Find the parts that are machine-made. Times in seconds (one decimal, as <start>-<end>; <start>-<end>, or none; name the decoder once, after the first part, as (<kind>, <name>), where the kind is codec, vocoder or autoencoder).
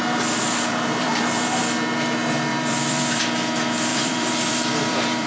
0.4-1.6 (vocoder, BigVGAN v2); 2.5-3.2; 3.9-5.3